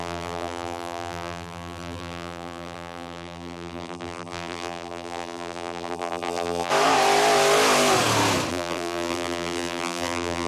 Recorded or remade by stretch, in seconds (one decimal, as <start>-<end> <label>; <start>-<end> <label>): 0.0-6.7 remade; 6.7-8.5 recorded; 8.5-10.5 remade